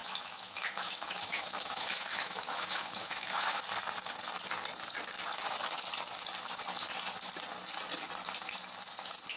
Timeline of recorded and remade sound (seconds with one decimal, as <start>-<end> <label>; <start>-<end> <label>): 0.0-3.6 remade; 3.6-9.4 recorded